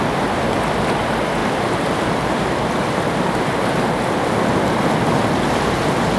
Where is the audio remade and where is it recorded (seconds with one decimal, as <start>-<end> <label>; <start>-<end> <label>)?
0.0-6.2 recorded